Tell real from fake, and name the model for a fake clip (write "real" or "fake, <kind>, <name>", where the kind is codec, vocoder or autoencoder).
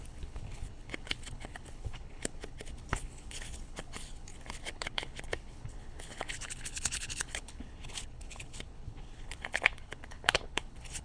fake, codec, HILCodec